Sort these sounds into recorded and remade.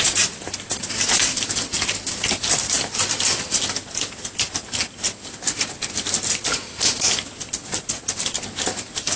recorded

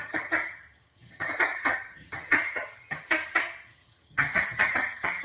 remade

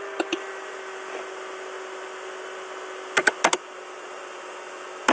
recorded